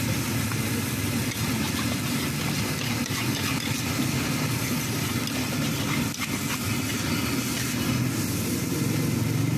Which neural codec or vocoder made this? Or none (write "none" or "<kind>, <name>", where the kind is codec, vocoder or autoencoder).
none